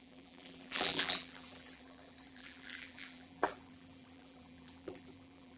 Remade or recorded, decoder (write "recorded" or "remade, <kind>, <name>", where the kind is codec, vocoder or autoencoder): remade, vocoder, BigVGAN v2